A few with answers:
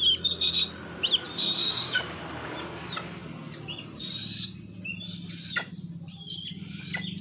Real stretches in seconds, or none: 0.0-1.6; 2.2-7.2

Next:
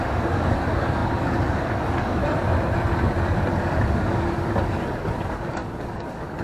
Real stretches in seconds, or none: 2.2-3.5

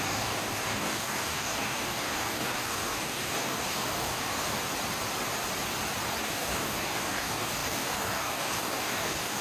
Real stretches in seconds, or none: 4.6-6.2

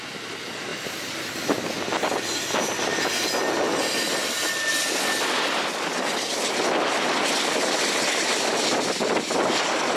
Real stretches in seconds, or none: 0.0-10.0

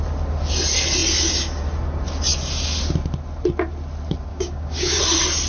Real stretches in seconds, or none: 0.0-4.3; 5.0-5.5

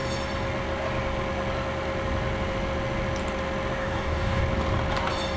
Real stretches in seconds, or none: 0.0-3.8; 4.4-5.4

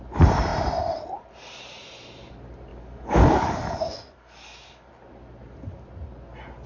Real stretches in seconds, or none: 0.0-2.7; 4.9-6.7